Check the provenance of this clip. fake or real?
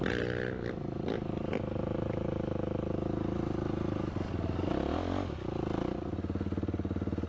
real